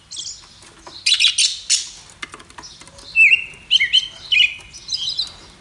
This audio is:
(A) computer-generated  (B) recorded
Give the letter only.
B